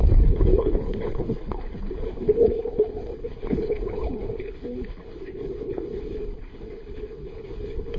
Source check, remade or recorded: remade